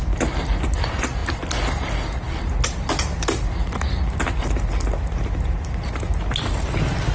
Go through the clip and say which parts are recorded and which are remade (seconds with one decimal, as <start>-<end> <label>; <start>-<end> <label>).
0.0-7.1 recorded